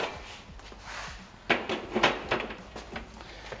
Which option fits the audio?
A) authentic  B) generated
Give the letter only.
A